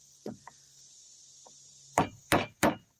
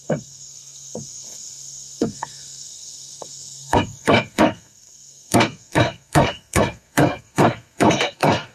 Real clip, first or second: first